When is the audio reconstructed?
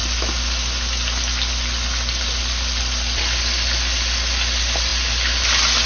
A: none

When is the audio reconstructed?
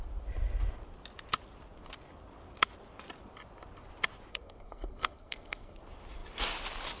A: 4.3-5.8 (codec, SNAC)